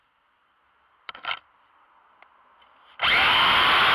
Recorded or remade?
remade